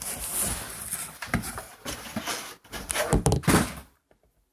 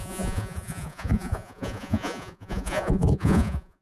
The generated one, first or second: second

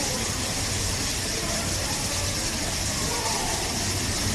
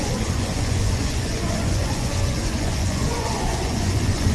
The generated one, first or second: second